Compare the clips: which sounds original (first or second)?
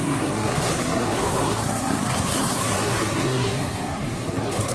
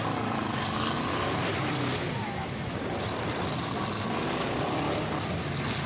second